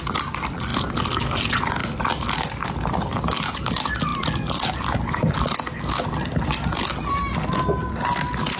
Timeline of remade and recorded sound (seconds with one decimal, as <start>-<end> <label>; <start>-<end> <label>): 0.0-1.8 recorded; 1.8-3.2 remade; 3.2-8.6 recorded